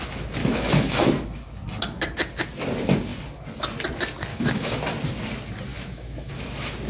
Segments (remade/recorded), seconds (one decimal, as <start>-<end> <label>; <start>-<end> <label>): 0.0-0.4 recorded; 0.4-1.1 remade; 1.1-4.3 recorded; 4.3-4.8 remade; 4.8-5.7 recorded; 5.7-6.3 remade; 6.3-6.9 recorded